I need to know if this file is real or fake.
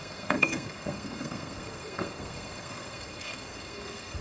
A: fake